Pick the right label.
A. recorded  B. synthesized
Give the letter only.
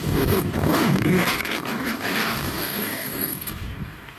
B